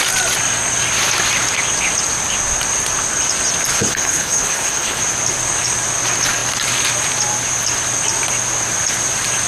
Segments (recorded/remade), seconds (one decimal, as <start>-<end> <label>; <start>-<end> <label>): 0.0-3.7 recorded; 3.7-5.0 remade; 5.0-9.5 recorded